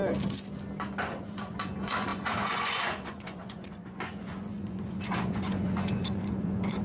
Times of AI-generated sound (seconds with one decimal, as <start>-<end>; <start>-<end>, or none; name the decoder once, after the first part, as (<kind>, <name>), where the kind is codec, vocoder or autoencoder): 1.0-6.8 (vocoder, Vocos)